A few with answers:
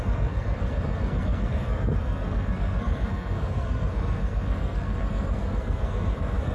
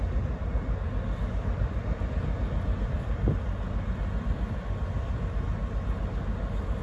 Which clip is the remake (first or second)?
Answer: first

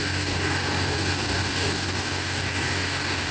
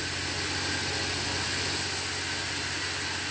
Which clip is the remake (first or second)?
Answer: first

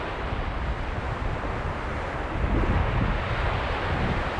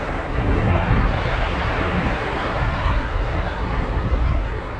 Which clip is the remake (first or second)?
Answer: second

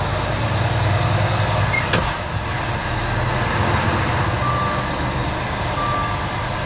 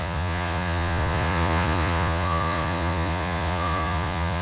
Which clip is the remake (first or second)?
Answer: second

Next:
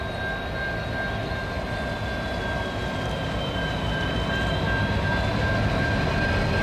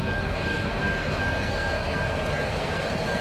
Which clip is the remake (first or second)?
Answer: second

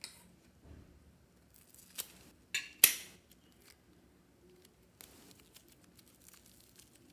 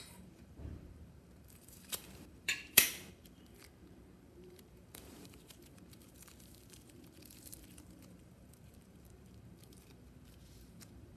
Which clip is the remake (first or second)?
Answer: second